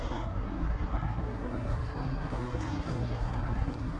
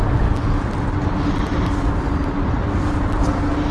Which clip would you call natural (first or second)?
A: second